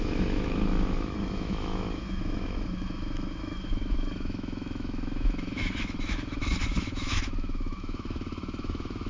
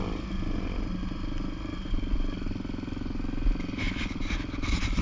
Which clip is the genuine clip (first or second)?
second